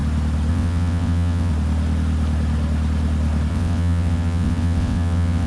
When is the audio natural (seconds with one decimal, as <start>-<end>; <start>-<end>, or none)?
0.0-0.5; 1.5-3.5